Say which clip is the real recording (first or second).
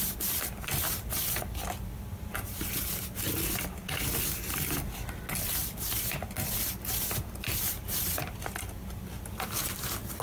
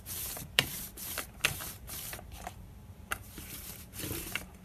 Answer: first